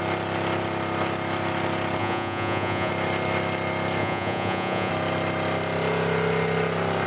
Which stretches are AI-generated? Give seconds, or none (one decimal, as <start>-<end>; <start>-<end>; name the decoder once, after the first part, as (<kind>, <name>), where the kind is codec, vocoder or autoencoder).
2.0-2.9 (vocoder, Vocos); 4.0-4.9

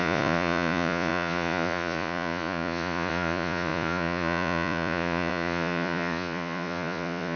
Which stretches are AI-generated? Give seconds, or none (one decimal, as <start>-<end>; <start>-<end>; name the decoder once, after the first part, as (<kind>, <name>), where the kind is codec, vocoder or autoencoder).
0.0-7.4 (vocoder, Vocos)

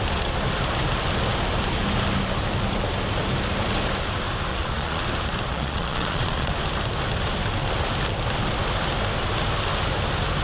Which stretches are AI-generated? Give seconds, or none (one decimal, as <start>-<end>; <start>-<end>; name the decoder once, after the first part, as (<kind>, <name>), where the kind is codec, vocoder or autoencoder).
4.5-5.0 (vocoder, Vocos); 5.5-6.5

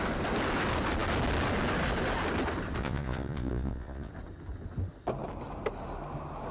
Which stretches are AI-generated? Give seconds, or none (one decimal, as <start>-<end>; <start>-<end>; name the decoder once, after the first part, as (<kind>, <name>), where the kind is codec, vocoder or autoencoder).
2.8-4.1 (vocoder, Vocos)

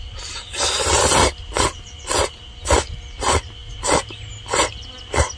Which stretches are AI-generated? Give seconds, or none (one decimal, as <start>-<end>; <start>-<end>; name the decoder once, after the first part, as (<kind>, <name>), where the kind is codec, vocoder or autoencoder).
none

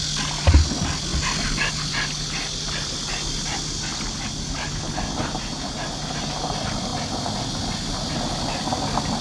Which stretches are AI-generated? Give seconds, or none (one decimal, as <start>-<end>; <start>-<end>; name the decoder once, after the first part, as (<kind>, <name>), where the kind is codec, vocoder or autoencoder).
none

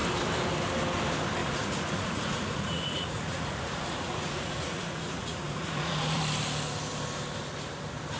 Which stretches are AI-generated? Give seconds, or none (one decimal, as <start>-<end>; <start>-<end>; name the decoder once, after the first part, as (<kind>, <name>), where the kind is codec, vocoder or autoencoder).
1.4-6.2 (vocoder, Vocos)

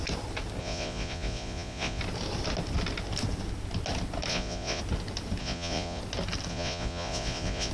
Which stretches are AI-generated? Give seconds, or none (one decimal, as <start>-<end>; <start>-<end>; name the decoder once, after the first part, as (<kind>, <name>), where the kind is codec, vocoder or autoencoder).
0.6-2.0 (vocoder, Vocos); 4.3-4.8; 5.4-6.0; 6.5-7.7